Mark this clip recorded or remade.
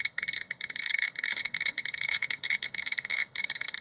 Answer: remade